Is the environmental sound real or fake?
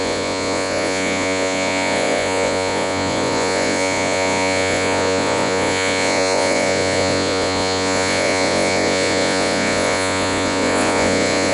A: fake